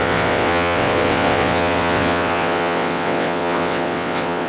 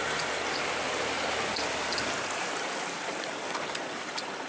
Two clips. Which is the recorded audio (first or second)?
second